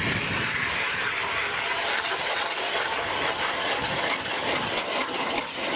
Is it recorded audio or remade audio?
recorded